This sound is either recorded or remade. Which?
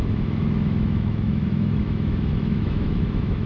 remade